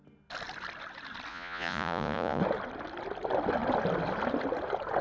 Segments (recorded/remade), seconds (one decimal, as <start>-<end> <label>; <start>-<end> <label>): 0.0-1.3 recorded; 1.3-2.4 remade; 2.4-5.0 recorded